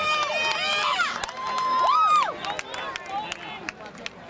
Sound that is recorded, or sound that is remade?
recorded